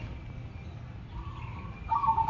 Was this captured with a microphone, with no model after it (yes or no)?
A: yes